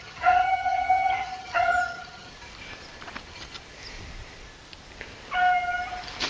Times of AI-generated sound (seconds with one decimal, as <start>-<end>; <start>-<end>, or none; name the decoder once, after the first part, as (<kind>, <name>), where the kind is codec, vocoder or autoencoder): 0.0-2.3 (vocoder, HiFi-GAN)